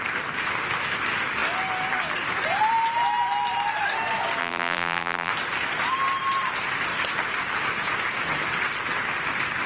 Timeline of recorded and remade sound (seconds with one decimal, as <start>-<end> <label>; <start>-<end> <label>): 0.0-4.4 recorded; 4.4-5.3 remade; 5.3-9.7 recorded